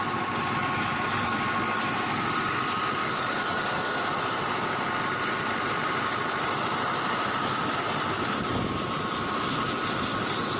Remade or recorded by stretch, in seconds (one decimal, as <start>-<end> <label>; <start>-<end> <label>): 0.0-0.6 recorded; 0.6-1.8 remade; 1.8-3.0 recorded; 3.0-4.0 remade; 4.0-10.6 recorded